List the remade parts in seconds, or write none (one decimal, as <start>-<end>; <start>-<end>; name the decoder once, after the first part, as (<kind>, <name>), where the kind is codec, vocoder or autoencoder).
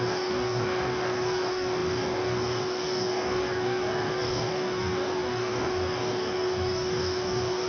0.0-7.7 (codec, DAC)